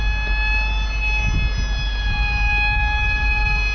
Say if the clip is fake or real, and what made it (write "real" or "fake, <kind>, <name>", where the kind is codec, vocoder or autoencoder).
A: real